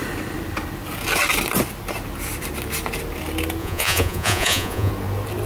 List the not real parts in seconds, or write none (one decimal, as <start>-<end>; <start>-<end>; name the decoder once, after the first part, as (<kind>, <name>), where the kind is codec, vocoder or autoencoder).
3.6-4.9 (vocoder, Vocos)